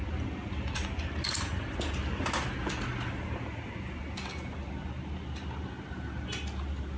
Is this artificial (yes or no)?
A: no